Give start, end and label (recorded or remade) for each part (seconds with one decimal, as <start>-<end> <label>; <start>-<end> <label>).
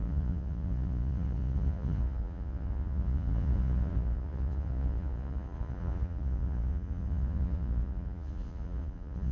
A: 0.0-9.3 remade